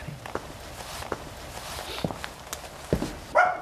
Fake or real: real